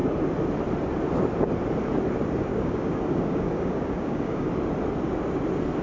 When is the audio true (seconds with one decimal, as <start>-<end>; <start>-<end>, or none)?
0.0-2.5; 4.5-5.8